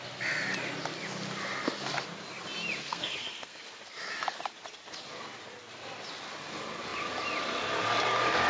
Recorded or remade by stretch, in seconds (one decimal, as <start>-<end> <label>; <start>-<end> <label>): 0.0-2.9 recorded; 2.9-3.6 remade; 3.6-8.5 recorded